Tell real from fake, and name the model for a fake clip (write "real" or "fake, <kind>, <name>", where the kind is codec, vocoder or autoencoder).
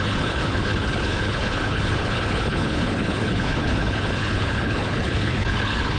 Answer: fake, codec, HILCodec